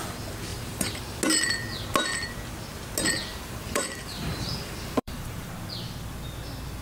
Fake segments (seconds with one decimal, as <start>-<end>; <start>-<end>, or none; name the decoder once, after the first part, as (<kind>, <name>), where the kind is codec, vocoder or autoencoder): 0.5-1.2 (vocoder, BigVGAN v2); 3.3-5.5